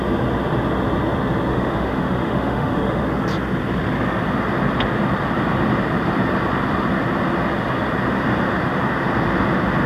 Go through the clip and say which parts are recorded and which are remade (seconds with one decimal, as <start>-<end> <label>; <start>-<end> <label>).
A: 0.0-1.5 recorded; 1.5-3.0 remade; 3.0-9.9 recorded